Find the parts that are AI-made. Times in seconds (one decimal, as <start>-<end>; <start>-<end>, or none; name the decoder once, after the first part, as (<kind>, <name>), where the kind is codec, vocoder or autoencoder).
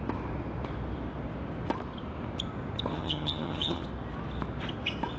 2.9-3.8 (vocoder, HiFi-GAN)